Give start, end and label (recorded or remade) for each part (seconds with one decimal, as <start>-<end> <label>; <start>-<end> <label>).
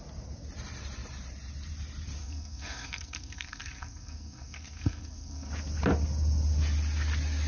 0.0-2.2 recorded; 2.2-5.5 remade; 5.5-7.5 recorded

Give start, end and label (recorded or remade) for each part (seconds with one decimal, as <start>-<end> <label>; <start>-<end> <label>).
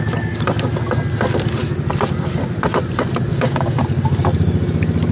0.0-3.3 recorded; 3.3-3.8 remade; 3.8-5.1 recorded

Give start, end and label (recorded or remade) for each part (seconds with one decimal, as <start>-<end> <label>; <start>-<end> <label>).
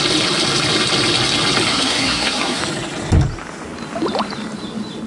0.0-1.7 recorded; 1.7-2.6 remade; 2.6-5.1 recorded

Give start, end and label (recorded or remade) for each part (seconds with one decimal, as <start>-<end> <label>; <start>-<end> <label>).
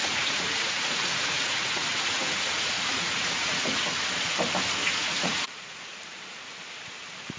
0.0-3.9 remade; 3.9-4.8 recorded; 4.8-6.0 remade; 6.0-7.4 recorded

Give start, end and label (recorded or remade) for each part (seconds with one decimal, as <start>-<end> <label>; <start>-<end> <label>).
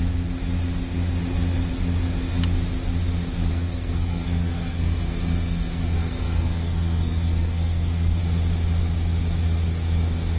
0.0-3.5 recorded; 3.5-8.2 remade; 8.2-10.4 recorded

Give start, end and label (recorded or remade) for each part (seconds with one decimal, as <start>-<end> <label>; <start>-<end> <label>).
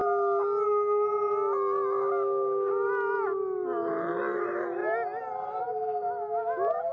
0.0-6.9 recorded